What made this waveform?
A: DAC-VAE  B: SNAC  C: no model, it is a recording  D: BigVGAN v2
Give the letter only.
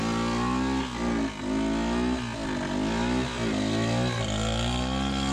C